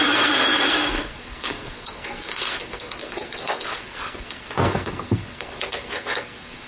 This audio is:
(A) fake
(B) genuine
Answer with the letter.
A